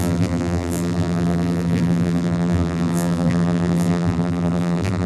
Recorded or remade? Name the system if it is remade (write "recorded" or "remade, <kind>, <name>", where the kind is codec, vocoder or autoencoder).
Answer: remade, vocoder, BigVGAN v2